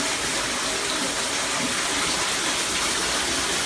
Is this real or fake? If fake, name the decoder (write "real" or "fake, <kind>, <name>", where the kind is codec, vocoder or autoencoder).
real